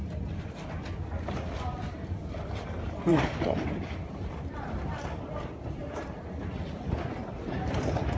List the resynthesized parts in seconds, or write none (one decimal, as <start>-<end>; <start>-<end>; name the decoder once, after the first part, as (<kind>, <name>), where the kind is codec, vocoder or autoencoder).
3.1-6.4 (vocoder, BigVGAN v2)